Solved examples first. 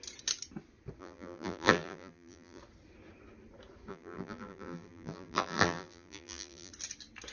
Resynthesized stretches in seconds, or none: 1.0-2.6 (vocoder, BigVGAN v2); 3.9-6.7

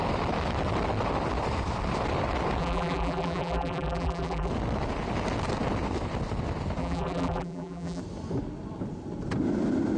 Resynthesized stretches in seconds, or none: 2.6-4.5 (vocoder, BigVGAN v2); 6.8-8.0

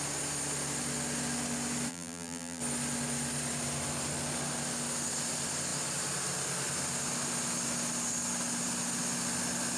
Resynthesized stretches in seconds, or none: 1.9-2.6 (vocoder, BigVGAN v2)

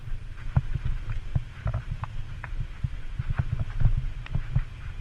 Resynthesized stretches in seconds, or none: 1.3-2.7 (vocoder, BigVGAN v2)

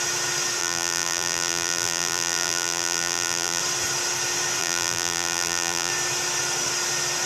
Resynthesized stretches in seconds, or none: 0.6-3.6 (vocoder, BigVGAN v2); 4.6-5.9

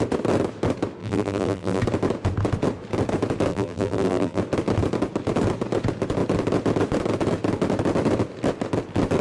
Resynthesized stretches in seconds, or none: 1.0-1.8 (vocoder, BigVGAN v2); 3.5-4.4